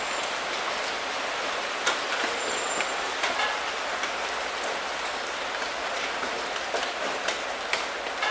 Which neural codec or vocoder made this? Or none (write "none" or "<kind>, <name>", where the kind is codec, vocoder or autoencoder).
none